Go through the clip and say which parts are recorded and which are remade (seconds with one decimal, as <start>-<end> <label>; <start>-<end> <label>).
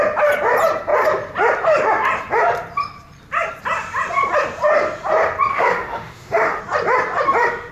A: 0.0-5.5 recorded; 5.5-6.6 remade; 6.6-7.7 recorded